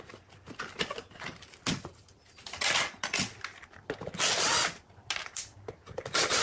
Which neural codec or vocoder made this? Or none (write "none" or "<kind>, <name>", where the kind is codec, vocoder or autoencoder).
none